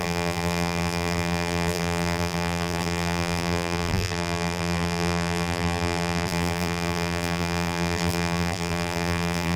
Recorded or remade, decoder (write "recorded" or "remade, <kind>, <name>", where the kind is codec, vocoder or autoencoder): remade, vocoder, BigVGAN v2